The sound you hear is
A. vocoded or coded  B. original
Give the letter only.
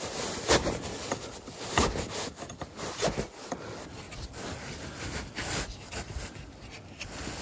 B